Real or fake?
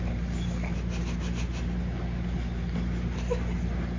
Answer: real